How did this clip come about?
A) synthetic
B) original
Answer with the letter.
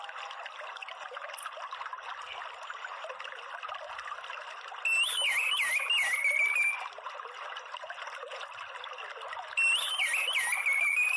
B